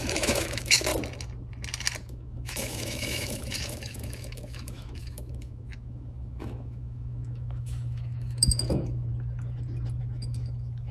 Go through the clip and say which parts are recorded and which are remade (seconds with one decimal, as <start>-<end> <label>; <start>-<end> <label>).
0.0-0.9 remade; 0.9-2.0 recorded; 2.0-9.1 remade; 9.1-10.0 recorded; 10.0-10.9 remade